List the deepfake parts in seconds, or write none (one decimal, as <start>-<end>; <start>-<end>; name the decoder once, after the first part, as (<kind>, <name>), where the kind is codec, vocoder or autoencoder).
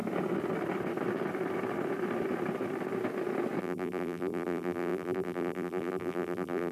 3.6-6.7 (vocoder, BigVGAN v2)